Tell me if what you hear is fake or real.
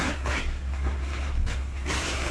fake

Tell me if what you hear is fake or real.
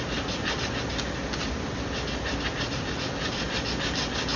real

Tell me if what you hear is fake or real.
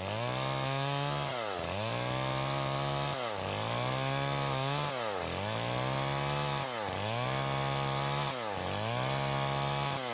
real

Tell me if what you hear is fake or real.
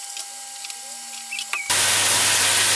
real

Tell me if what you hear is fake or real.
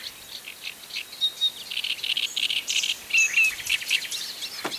real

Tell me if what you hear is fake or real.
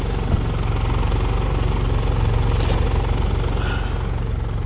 real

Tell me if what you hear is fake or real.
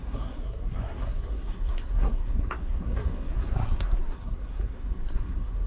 fake